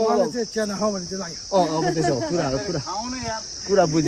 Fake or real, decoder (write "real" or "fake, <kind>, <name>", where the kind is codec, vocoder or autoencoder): real